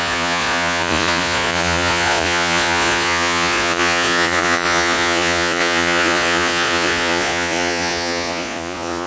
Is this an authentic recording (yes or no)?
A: no